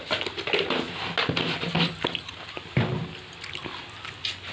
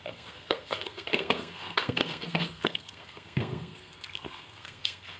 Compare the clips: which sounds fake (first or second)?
second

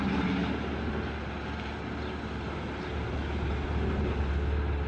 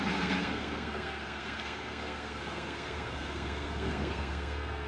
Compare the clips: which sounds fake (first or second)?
second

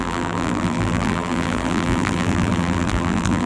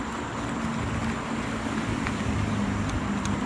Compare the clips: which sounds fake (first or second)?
first